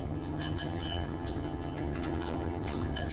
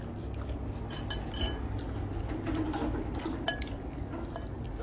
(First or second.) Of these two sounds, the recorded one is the second